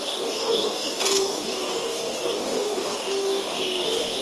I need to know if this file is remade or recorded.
remade